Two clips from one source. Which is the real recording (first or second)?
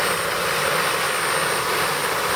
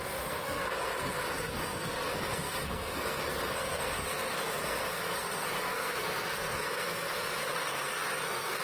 first